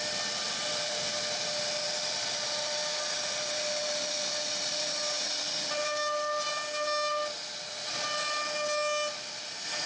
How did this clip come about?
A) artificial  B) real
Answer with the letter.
B